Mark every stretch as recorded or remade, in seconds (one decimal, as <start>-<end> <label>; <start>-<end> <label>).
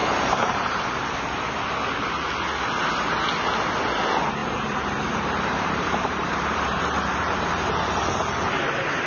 0.0-1.2 remade; 1.2-4.4 recorded; 4.4-9.1 remade